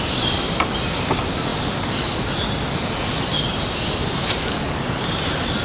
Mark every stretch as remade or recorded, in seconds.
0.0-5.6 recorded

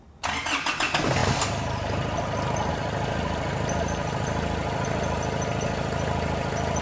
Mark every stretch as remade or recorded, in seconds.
0.0-6.8 recorded

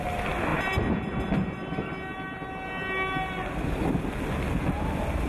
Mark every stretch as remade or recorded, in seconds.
0.0-0.5 recorded; 0.5-1.3 remade; 1.3-5.3 recorded

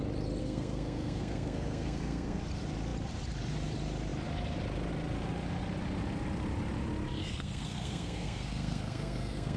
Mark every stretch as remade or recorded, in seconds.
0.0-0.4 recorded; 0.4-2.4 remade; 2.4-7.2 recorded; 7.2-9.6 remade

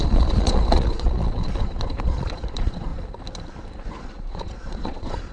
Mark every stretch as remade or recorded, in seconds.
0.0-2.9 remade; 2.9-3.8 recorded; 3.8-5.3 remade

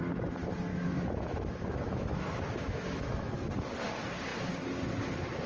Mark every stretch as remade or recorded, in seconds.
0.0-0.7 recorded; 0.7-3.5 remade; 3.5-5.5 recorded

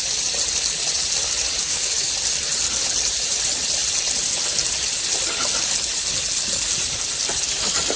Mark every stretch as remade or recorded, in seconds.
0.0-1.6 recorded; 1.6-2.1 remade; 2.1-8.0 recorded